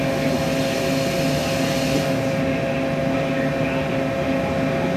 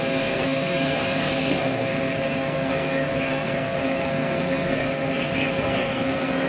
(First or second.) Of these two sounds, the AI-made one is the second